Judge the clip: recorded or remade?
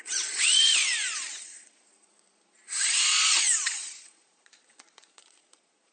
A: remade